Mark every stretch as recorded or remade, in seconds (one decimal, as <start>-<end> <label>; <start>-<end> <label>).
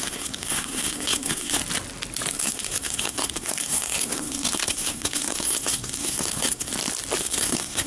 0.0-1.6 remade; 1.6-2.3 recorded; 2.3-6.7 remade; 6.7-7.2 recorded; 7.2-7.9 remade